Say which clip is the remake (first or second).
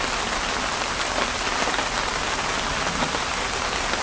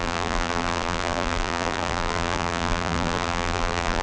second